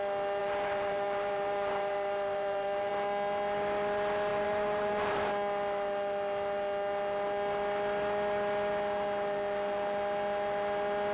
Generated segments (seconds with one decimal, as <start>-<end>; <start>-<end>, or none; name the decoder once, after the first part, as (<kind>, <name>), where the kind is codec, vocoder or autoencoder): 0.4-2.9 (vocoder, BigVGAN v2); 4.3-5.3